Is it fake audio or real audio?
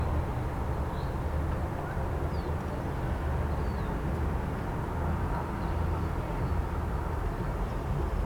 real